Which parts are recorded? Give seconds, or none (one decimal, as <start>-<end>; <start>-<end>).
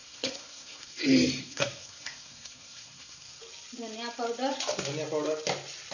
1.0-1.4; 3.4-5.9